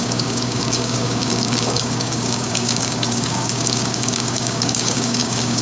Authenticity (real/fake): fake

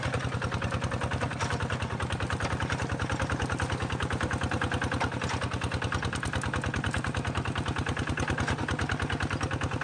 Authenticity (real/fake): real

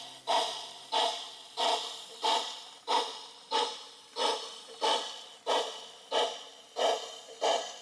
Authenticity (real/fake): real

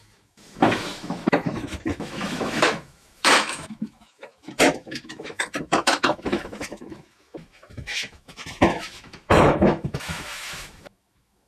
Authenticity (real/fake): fake